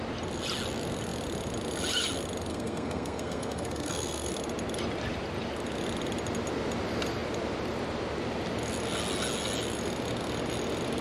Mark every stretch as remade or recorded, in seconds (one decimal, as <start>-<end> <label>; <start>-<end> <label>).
0.0-2.5 recorded; 2.5-4.3 remade; 4.3-11.0 recorded